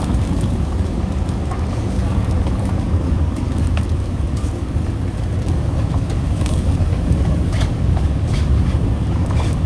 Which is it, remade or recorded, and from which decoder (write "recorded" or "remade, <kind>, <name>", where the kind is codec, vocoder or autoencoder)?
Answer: remade, codec, DAC